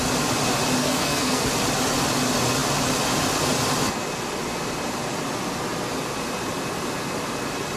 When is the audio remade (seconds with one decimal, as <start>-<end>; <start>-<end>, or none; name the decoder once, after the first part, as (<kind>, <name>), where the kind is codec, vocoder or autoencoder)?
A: 0.8-1.5 (codec, SNAC)